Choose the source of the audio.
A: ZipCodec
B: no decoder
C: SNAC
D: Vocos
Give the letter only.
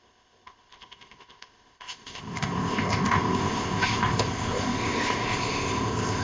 A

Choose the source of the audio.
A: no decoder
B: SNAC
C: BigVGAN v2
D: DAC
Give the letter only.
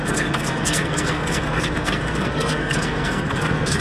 B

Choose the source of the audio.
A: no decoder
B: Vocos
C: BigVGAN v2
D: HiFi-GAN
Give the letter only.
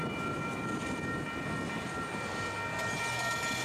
A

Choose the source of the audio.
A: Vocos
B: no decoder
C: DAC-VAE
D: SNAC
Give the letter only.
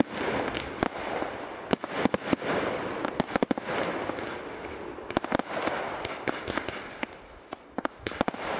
B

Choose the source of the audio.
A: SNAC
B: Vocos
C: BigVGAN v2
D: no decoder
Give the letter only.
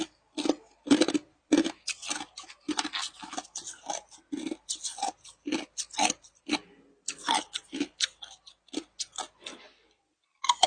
D